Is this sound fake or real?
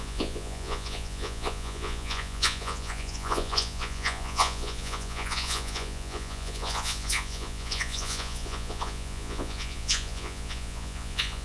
fake